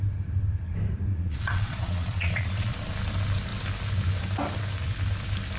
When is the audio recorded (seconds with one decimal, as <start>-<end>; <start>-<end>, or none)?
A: 0.0-1.1; 2.7-5.6